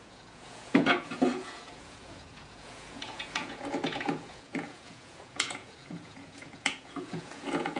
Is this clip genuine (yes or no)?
no